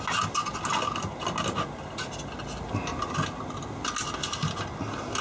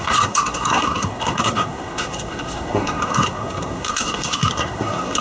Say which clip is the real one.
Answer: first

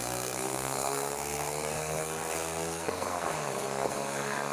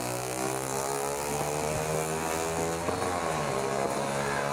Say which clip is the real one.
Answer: second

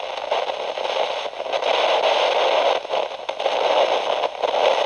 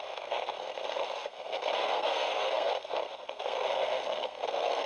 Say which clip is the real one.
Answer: first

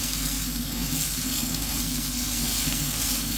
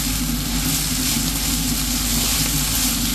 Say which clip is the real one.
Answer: second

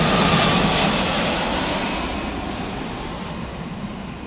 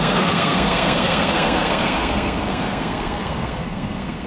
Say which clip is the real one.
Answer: first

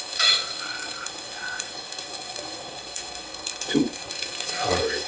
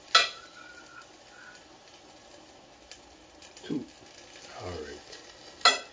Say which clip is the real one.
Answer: second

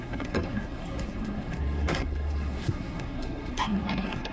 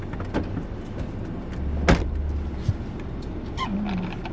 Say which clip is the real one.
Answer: second